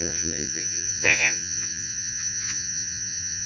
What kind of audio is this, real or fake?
fake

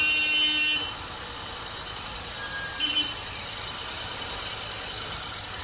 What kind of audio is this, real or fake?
real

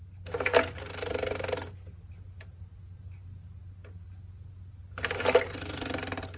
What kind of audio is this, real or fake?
real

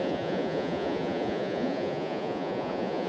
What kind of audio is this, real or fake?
fake